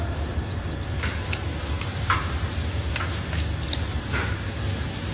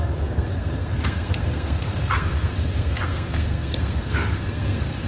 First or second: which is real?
first